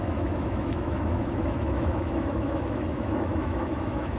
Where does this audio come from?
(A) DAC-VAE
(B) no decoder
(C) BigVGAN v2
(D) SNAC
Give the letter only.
A